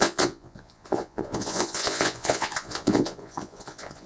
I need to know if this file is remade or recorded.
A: remade